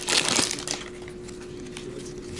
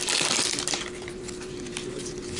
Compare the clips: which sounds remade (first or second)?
second